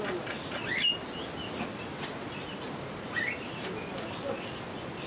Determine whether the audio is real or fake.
real